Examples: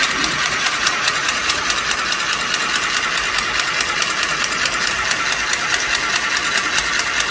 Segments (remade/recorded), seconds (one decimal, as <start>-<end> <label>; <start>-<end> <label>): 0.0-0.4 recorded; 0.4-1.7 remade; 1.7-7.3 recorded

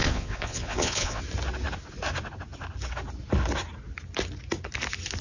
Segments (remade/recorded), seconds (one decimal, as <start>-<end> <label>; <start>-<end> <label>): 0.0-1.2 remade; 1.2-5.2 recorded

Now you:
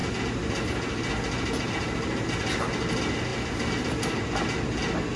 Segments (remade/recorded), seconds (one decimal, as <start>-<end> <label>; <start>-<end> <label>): 0.0-5.2 recorded